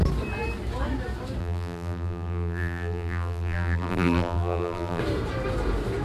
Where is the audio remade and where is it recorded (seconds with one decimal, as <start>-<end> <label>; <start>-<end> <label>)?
0.0-1.4 recorded; 1.4-5.0 remade; 5.0-6.0 recorded